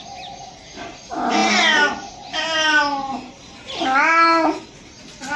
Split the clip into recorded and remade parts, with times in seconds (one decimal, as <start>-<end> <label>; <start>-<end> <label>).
0.0-5.4 recorded